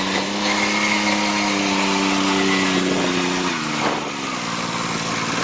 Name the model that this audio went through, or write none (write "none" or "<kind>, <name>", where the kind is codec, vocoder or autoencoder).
none